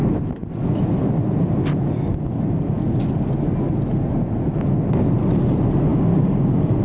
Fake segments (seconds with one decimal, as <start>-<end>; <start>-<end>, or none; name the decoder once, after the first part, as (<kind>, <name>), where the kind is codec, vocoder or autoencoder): 5.9-6.8 (codec, DAC)